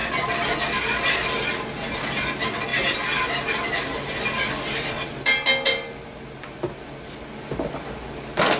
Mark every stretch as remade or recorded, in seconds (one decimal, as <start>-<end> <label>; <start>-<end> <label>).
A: 0.0-8.6 recorded